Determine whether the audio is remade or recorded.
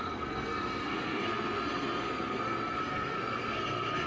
remade